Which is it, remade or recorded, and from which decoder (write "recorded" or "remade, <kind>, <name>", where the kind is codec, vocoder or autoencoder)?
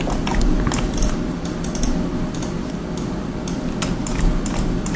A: recorded